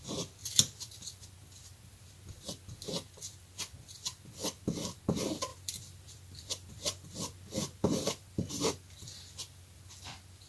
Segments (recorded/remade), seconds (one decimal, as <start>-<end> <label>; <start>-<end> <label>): 0.0-5.5 recorded; 5.5-8.7 remade; 8.7-10.5 recorded